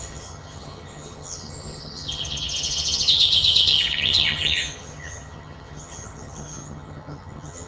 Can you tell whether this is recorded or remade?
remade